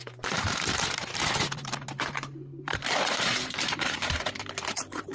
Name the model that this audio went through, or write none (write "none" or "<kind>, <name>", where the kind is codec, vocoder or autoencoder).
vocoder, BigVGAN v2